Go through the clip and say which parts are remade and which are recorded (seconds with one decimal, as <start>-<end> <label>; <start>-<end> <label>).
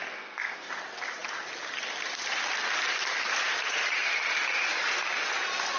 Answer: 0.0-0.7 remade; 0.7-5.8 recorded